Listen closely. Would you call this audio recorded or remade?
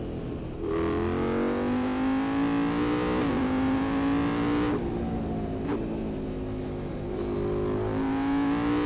recorded